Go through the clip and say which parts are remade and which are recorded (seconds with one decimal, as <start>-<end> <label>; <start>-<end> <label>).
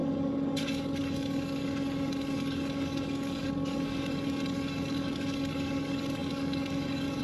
0.0-7.2 remade